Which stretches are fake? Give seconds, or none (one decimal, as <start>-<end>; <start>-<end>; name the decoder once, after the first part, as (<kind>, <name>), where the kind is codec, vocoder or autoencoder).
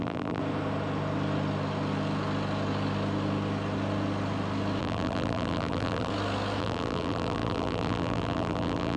0.0-0.4 (vocoder, BigVGAN v2); 4.8-6.1; 6.6-9.0